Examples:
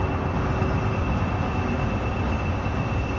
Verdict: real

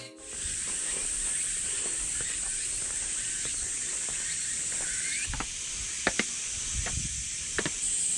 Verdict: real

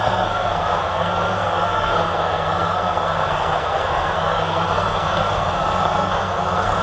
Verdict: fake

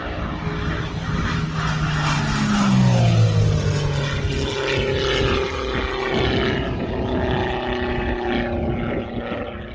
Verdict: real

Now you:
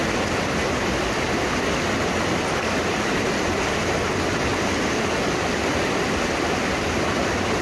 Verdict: real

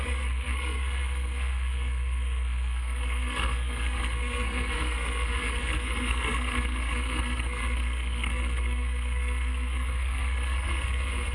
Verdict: fake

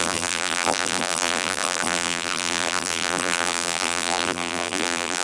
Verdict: fake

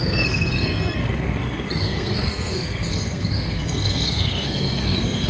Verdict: fake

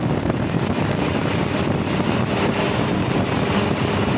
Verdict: real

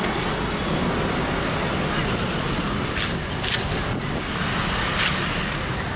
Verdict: real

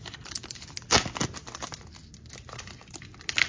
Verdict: real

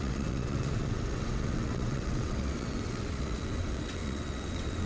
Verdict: fake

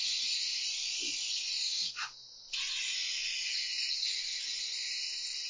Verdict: real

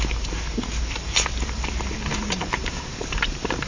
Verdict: fake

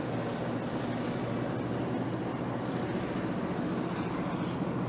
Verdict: real